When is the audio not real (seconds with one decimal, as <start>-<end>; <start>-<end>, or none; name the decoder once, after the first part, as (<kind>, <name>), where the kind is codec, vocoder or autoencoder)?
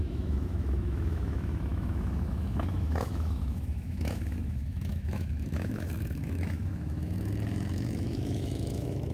0.0-9.1 (autoencoder, DAC-VAE)